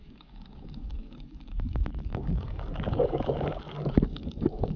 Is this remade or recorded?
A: remade